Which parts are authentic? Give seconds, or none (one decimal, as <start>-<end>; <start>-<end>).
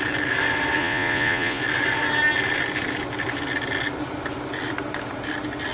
0.0-0.8; 1.6-5.7